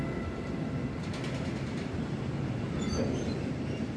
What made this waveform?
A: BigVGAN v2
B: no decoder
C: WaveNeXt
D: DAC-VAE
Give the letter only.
B